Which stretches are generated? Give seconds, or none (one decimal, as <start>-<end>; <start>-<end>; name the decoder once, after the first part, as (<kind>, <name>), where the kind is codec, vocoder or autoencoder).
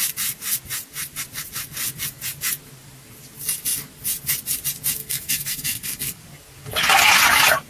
5.0-6.2 (codec, SNAC)